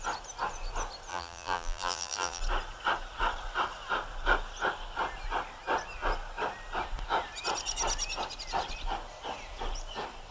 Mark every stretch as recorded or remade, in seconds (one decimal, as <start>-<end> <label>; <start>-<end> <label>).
0.0-1.1 recorded; 1.1-2.4 remade; 2.4-10.3 recorded